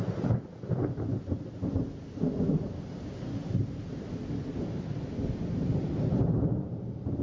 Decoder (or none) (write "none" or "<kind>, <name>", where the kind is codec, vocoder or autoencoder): none